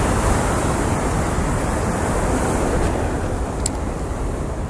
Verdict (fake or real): real